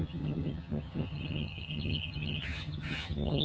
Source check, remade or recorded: remade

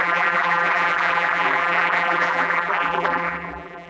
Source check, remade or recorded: remade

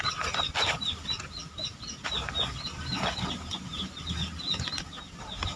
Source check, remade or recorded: recorded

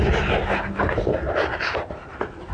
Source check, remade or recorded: recorded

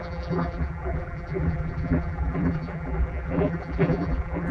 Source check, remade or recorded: remade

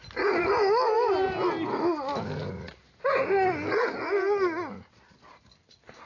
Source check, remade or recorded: recorded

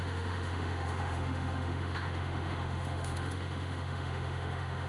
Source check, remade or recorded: remade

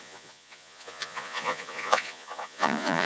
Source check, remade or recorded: remade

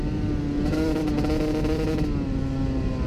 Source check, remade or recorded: recorded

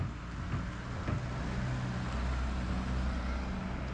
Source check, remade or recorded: recorded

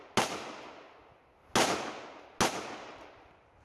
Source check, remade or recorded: recorded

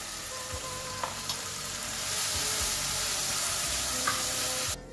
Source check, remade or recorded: remade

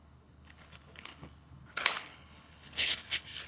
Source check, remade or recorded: remade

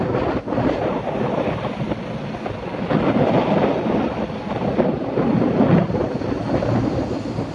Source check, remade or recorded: recorded